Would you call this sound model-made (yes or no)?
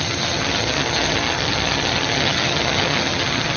yes